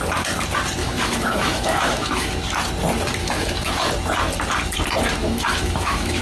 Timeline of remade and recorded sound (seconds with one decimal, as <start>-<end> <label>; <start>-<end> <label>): 0.0-0.8 recorded; 0.8-2.3 remade; 2.3-3.2 recorded; 3.2-3.9 remade; 3.9-5.2 recorded; 5.2-6.2 remade